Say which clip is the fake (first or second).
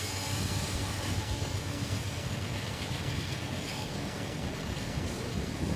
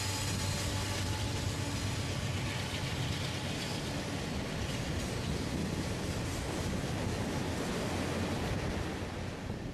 first